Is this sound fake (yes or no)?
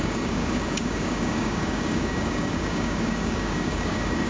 yes